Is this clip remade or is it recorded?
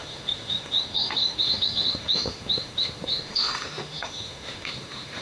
remade